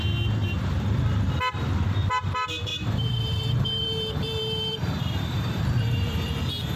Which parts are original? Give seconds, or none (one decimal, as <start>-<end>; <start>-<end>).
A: 0.0-0.4; 1.3-2.7; 6.3-6.8